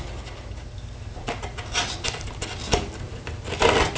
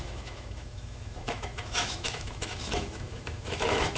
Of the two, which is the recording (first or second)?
first